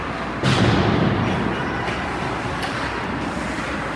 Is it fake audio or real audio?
real